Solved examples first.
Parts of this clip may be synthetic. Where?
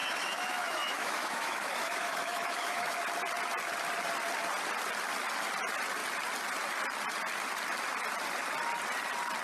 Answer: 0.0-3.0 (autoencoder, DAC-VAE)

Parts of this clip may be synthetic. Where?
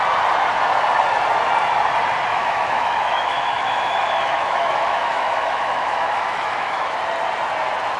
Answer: 2.3-7.0 (autoencoder, DAC-VAE)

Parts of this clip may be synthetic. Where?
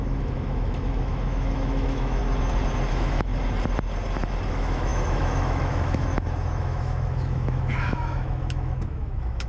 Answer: 0.0-2.2 (autoencoder, DAC-VAE); 2.9-3.3; 4.5-9.5